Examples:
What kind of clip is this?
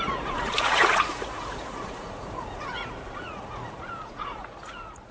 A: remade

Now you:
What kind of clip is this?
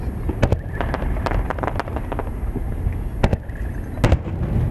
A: recorded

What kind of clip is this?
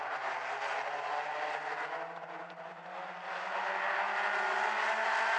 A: recorded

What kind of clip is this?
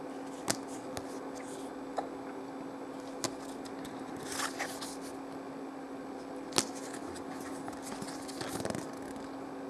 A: recorded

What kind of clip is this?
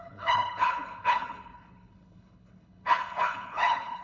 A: remade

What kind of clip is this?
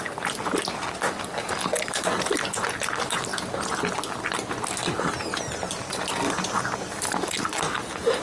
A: recorded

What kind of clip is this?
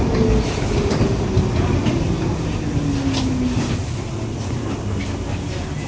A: recorded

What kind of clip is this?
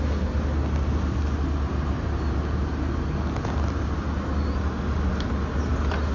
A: recorded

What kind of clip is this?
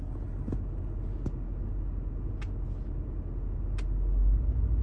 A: recorded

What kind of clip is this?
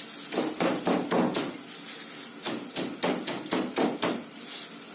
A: recorded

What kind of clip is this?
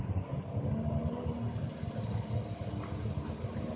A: recorded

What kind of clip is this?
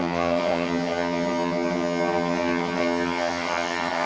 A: remade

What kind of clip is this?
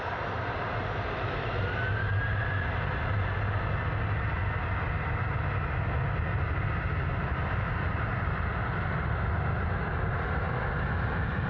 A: recorded